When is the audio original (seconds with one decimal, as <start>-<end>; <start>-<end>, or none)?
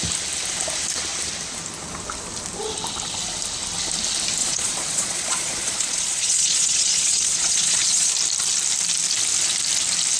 0.0-4.4; 8.1-10.2